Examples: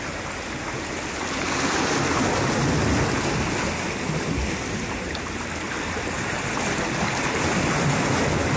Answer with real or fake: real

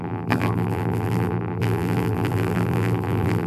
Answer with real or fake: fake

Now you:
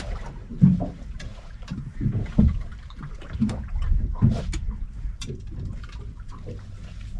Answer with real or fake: fake